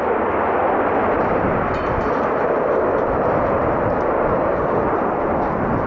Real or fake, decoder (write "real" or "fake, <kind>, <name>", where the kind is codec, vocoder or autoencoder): real